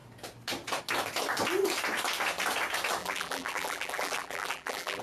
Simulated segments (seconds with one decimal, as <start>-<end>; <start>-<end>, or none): 3.0-5.0